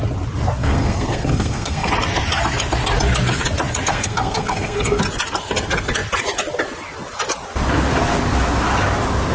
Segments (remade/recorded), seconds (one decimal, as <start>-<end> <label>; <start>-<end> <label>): 0.0-0.6 recorded; 0.6-1.9 remade; 1.9-3.9 recorded; 3.9-5.0 remade; 5.0-9.3 recorded